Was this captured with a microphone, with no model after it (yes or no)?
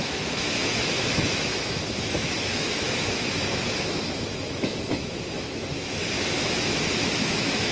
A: no